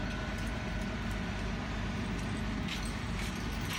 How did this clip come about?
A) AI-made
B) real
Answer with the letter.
B